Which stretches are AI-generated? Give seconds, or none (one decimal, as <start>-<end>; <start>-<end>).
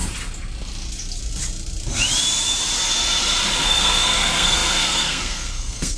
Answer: 3.6-6.0